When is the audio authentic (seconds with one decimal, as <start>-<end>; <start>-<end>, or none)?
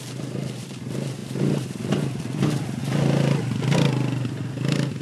2.8-4.3